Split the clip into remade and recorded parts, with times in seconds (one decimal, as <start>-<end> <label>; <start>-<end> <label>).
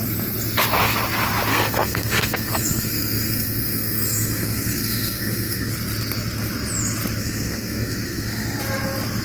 0.0-1.5 recorded; 1.5-5.7 remade; 5.7-7.2 recorded; 7.2-8.6 remade; 8.6-9.2 recorded